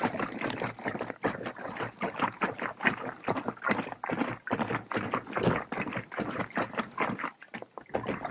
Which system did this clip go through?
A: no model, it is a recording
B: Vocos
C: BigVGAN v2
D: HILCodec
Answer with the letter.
A